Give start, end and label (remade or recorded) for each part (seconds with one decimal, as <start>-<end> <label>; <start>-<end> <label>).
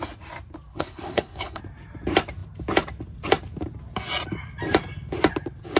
0.0-0.7 recorded; 0.7-1.6 remade; 1.6-5.8 recorded